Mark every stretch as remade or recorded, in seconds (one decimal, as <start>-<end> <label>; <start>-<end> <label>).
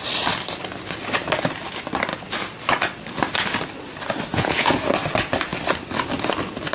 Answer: 0.0-4.3 recorded; 4.3-4.9 remade; 4.9-6.7 recorded